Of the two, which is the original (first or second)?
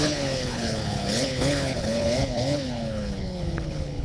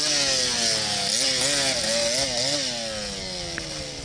second